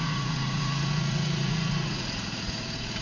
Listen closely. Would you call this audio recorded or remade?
remade